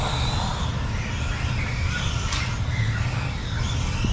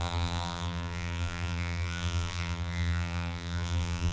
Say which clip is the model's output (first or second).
second